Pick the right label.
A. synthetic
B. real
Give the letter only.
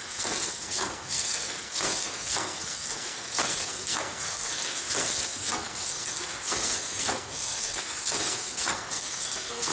A